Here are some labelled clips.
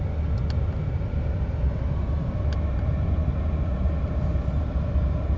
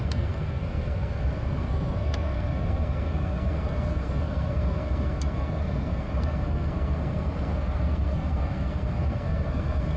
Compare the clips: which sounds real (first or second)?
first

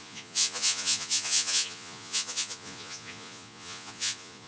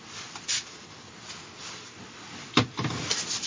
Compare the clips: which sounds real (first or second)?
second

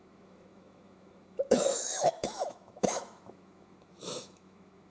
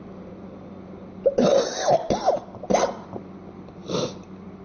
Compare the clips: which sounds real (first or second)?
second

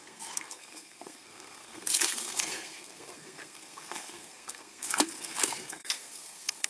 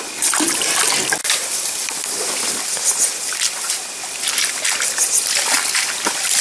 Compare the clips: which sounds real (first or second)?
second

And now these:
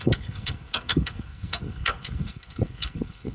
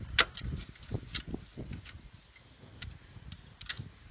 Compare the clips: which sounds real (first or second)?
second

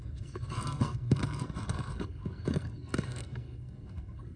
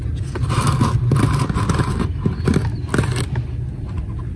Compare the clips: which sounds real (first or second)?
second